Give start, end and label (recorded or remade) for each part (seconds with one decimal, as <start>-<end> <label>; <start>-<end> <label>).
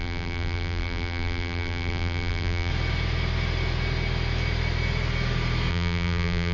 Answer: 0.0-2.7 remade; 2.7-5.7 recorded; 5.7-6.5 remade